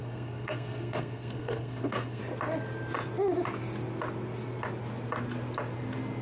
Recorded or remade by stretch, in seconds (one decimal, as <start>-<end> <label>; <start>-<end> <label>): 0.0-2.2 remade; 2.2-6.2 recorded